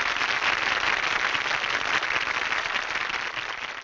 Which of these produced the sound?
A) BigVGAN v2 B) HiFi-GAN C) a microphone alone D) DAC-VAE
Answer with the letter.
C